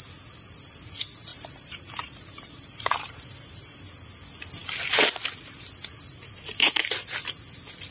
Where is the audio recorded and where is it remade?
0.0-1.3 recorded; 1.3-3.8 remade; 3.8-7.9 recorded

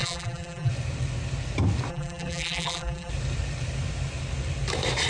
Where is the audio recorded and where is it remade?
0.0-0.7 remade; 0.7-1.9 recorded; 1.9-3.1 remade; 3.1-5.1 recorded

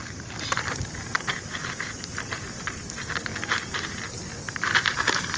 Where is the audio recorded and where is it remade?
0.0-3.3 remade; 3.3-5.4 recorded